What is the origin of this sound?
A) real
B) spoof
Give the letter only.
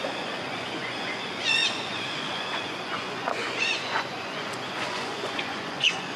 B